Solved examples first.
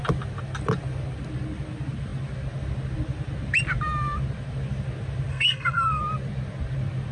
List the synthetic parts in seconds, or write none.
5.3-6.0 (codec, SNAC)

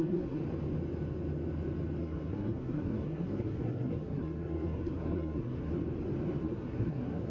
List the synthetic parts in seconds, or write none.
0.0-0.4 (codec, SNAC); 2.0-5.7; 6.4-7.3